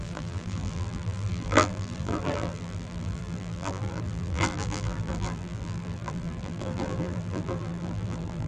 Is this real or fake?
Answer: fake